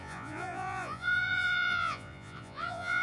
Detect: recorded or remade remade